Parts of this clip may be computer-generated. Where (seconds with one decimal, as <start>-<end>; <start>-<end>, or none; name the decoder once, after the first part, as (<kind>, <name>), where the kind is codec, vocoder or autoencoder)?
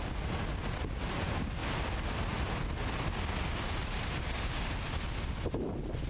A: none